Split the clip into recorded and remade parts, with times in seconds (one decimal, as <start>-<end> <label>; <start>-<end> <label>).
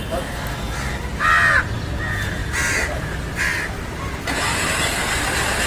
0.0-2.4 recorded; 2.4-3.2 remade; 3.2-5.7 recorded